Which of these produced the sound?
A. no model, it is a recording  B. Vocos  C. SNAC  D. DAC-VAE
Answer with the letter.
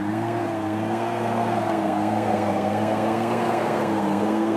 C